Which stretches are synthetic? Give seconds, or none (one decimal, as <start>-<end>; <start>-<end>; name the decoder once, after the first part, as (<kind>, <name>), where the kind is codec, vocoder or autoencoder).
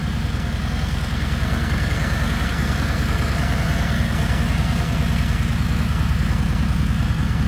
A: 0.0-7.5 (codec, SNAC)